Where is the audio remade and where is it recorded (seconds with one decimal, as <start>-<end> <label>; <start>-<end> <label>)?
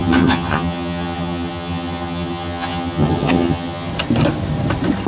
0.0-3.9 remade; 3.9-5.1 recorded